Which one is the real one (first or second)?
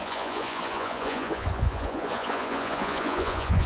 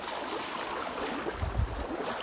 second